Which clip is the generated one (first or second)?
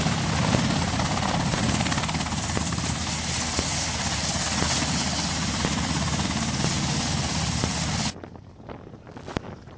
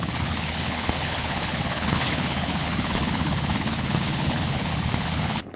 second